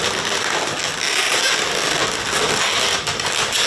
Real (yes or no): yes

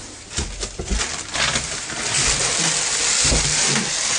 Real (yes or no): yes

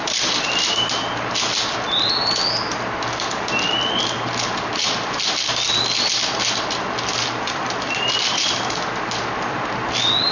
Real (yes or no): yes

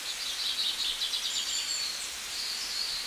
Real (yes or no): yes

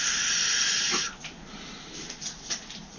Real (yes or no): yes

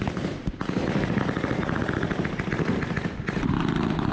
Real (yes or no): no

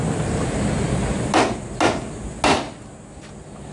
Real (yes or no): yes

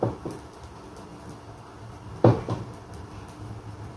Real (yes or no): yes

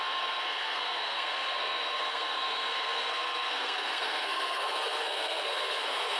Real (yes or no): no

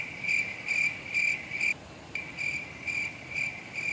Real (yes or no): yes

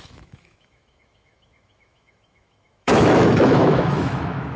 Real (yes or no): no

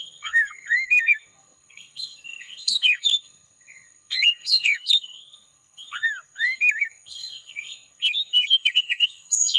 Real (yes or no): no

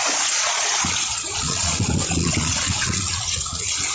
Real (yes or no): no